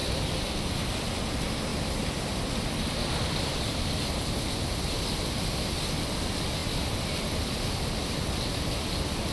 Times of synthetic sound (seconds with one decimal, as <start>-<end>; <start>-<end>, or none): 0.0-0.8; 1.7-4.0; 6.6-8.6